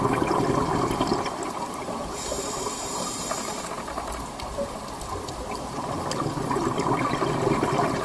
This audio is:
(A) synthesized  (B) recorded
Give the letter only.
B